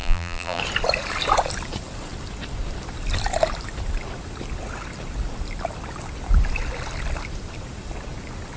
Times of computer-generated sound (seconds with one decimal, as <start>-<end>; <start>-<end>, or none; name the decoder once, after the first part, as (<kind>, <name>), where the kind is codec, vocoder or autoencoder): 0.0-0.6 (vocoder, BigVGAN v2)